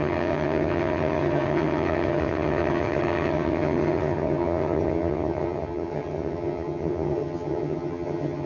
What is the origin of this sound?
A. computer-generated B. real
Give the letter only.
A